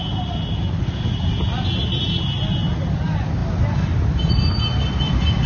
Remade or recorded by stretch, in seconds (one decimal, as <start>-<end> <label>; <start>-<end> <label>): 0.0-5.5 recorded